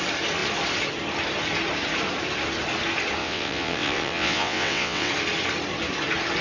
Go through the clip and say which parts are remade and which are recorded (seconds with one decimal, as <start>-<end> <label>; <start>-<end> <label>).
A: 0.0-3.2 recorded; 3.2-5.1 remade; 5.1-6.4 recorded